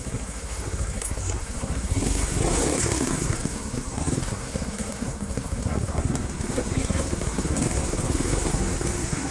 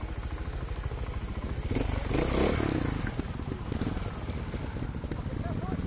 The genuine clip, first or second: second